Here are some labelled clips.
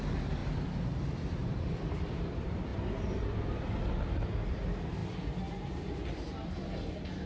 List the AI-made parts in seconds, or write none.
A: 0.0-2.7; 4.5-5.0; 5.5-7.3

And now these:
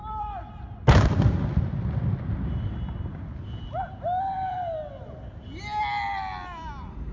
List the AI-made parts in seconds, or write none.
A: none

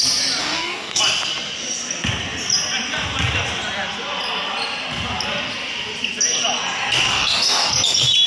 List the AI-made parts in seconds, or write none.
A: 0.4-1.0; 7.1-7.7

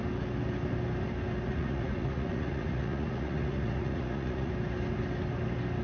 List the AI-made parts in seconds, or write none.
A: 1.5-4.5

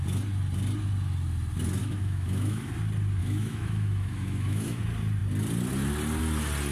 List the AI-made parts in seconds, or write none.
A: 1.8-2.7; 3.2-4.8

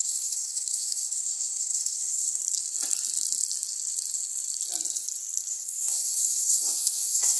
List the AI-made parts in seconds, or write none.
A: 0.0-2.4; 5.5-7.4

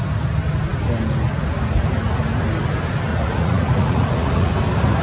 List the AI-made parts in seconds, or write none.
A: 3.1-4.5

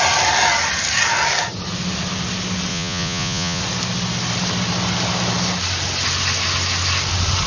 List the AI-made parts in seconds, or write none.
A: 2.7-3.6